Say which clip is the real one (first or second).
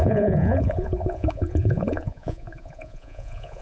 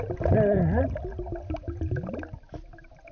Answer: second